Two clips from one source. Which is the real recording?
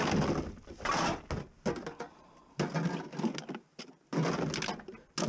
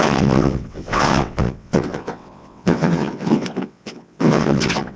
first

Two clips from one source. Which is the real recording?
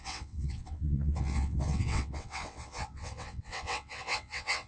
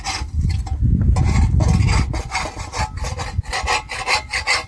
second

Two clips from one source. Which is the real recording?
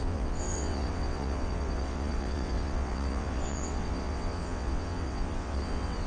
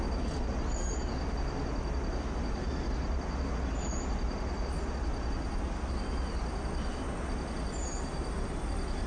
second